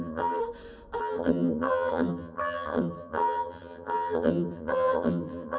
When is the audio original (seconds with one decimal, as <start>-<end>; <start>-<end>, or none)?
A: 0.4-1.0